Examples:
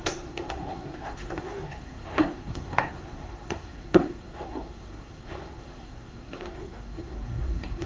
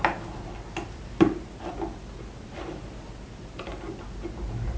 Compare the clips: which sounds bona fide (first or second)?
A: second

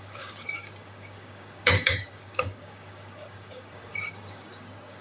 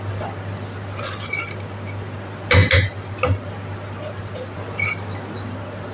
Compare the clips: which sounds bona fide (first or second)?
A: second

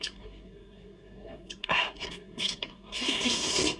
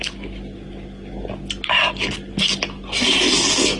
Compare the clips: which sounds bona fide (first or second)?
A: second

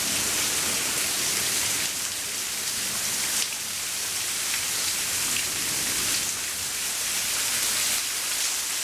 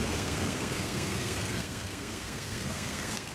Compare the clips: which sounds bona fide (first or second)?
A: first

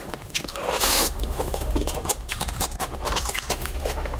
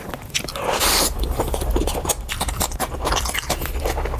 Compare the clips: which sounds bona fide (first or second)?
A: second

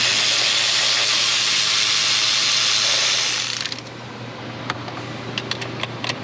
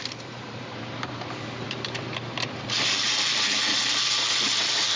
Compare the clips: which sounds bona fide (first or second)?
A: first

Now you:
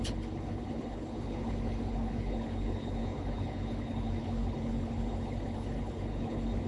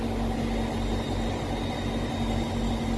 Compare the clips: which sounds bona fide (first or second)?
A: second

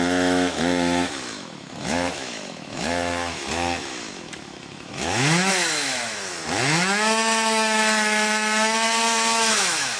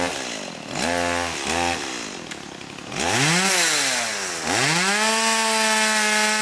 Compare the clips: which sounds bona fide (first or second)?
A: second